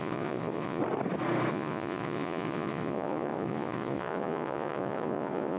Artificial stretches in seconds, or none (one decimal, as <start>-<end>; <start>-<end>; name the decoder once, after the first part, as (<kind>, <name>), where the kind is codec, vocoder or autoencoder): 0.0-0.8 (vocoder, Vocos); 1.5-5.6

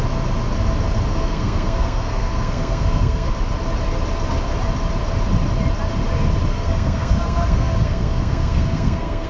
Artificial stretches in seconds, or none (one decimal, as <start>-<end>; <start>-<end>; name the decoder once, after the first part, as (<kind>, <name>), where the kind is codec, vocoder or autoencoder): 1.1-3.3 (codec, SNAC); 6.5-9.3

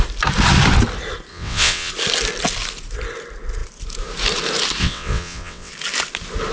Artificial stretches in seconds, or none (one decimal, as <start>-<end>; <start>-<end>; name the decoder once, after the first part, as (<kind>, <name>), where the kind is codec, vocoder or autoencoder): 1.3-1.9 (vocoder, WaveNeXt); 4.8-5.7

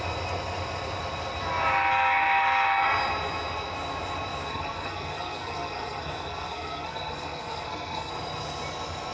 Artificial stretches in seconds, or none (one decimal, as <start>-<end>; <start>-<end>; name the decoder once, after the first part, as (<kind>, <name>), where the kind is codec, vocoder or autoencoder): 1.9-2.8 (codec, SNAC); 4.5-8.1

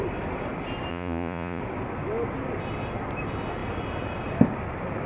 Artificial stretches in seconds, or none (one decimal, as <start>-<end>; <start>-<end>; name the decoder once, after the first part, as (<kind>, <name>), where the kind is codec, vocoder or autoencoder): 0.9-1.6 (vocoder, Vocos)